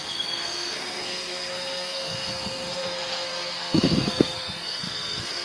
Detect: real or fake fake